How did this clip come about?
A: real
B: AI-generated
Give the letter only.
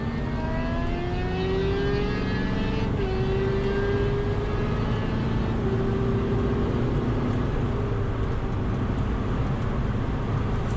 A